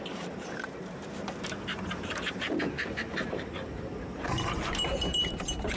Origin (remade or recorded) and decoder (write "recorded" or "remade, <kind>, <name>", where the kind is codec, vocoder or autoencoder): remade, vocoder, BigVGAN v2